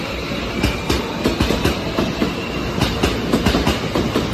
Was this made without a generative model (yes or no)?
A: yes